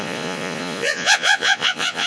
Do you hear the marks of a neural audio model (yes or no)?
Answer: yes